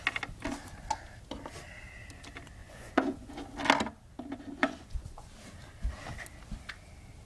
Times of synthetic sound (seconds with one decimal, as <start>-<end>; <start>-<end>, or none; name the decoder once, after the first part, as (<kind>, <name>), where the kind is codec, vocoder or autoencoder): 2.6-3.3 (vocoder, Vocos); 4.6-5.3